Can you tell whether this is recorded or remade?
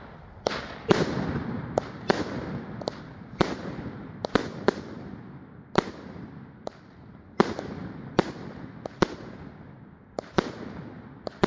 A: recorded